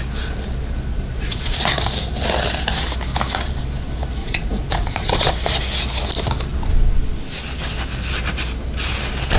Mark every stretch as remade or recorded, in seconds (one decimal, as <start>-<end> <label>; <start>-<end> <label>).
0.0-0.9 recorded; 0.9-1.6 remade; 1.6-4.2 recorded; 4.2-5.3 remade; 5.3-9.4 recorded